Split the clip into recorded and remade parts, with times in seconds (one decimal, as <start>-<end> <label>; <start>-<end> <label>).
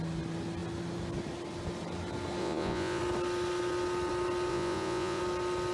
0.0-2.4 recorded; 2.4-3.0 remade; 3.0-4.5 recorded; 4.5-5.2 remade; 5.2-5.7 recorded